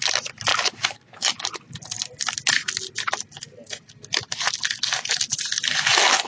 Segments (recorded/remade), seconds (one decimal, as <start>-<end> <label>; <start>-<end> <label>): 0.0-6.3 recorded